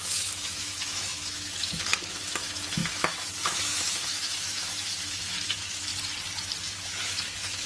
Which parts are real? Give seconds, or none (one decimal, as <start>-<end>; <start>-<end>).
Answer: 5.9-6.6